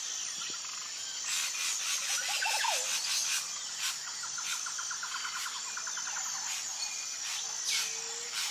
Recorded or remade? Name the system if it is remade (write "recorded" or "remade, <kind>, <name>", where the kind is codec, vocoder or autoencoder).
recorded